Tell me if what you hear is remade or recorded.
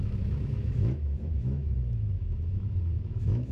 remade